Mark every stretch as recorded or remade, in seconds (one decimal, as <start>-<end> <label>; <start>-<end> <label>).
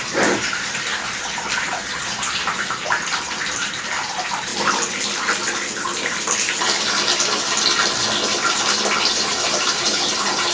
0.0-4.5 remade; 4.5-9.0 recorded; 9.0-10.5 remade